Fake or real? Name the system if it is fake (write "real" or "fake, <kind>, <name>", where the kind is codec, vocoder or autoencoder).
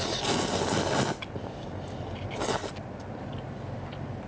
real